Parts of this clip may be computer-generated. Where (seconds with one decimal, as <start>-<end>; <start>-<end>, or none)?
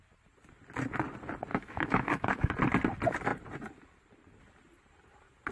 1.5-2.5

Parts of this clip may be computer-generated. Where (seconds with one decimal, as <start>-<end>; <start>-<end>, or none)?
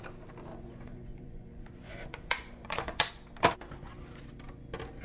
0.5-3.1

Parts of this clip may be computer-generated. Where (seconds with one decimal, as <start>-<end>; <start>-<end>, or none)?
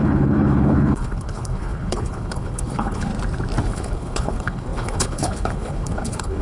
0.0-3.1; 3.6-6.4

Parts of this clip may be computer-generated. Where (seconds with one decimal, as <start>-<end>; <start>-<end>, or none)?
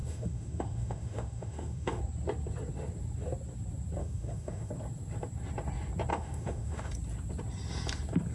0.0-2.0; 4.0-4.7; 6.1-6.9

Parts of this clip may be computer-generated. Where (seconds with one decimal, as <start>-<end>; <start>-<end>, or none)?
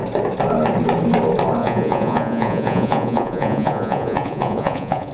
1.6-5.1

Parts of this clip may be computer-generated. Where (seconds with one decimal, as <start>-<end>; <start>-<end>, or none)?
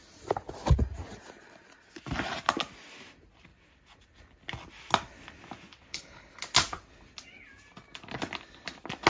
5.9-6.4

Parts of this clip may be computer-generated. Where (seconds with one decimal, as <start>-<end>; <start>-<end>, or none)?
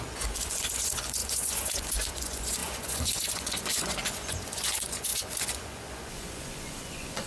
0.0-7.3